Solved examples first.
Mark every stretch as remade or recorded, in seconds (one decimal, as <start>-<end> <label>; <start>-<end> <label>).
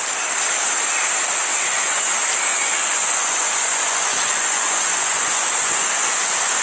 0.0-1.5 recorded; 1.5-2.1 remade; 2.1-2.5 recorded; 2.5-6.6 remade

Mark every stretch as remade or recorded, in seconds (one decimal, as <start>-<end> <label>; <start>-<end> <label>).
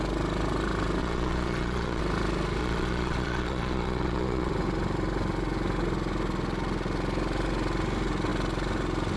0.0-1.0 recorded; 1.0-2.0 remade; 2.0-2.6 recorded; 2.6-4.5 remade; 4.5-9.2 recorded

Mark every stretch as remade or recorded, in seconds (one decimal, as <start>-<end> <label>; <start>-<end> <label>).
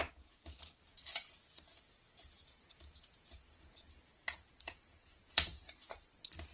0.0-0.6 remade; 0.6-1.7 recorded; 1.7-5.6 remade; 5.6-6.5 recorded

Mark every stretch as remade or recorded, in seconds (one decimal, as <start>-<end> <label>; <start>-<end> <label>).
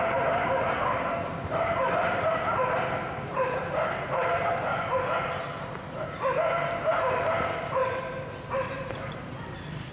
0.0-9.9 recorded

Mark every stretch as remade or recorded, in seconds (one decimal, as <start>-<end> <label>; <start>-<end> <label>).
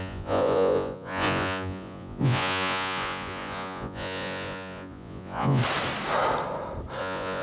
0.0-5.6 remade; 5.6-7.0 recorded; 7.0-7.4 remade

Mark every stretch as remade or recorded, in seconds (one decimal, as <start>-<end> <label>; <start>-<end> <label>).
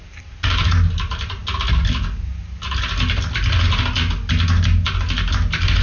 0.0-5.8 recorded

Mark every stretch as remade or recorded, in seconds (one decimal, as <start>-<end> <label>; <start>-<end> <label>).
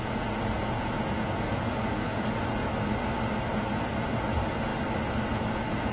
0.0-2.6 remade; 2.6-3.5 recorded; 3.5-4.7 remade; 4.7-5.3 recorded; 5.3-5.9 remade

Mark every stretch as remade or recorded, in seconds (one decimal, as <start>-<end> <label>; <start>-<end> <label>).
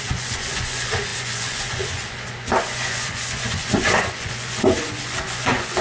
0.0-5.8 remade